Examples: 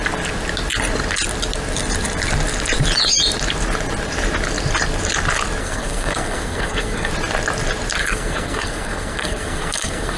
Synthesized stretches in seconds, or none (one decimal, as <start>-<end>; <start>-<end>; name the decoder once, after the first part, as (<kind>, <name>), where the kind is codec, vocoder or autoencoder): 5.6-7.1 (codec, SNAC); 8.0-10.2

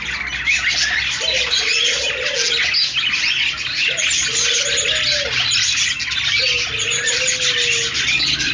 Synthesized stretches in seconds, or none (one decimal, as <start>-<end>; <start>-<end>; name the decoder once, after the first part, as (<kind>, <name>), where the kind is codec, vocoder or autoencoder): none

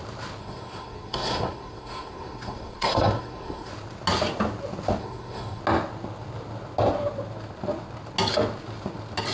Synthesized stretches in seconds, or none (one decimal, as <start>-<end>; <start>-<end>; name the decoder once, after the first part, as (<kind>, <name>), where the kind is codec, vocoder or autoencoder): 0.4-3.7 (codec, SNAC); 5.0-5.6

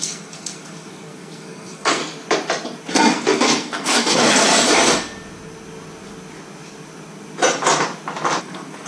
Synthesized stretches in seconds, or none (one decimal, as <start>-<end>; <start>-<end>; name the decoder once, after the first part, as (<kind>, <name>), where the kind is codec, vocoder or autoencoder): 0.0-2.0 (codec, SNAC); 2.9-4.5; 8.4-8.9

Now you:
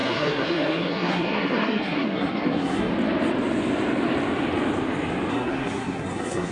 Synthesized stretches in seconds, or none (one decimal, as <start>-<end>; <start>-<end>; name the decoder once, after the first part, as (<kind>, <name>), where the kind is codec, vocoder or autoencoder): 0.0-2.9 (codec, SNAC); 5.3-6.5

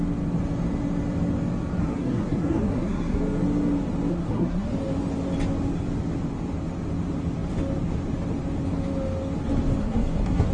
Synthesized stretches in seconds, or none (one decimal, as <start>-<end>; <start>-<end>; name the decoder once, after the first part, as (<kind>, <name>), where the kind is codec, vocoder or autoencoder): 1.8-3.2 (codec, SNAC); 4.1-4.7; 9.8-10.5

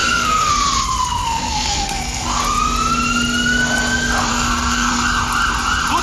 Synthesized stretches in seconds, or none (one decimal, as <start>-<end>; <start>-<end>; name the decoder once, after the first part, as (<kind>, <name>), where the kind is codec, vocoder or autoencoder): 0.0-0.5 (codec, SNAC); 1.2-2.4; 4.3-4.9